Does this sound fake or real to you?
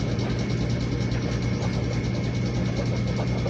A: real